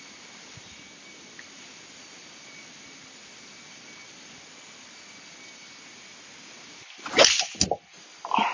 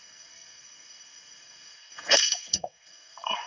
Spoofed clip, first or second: second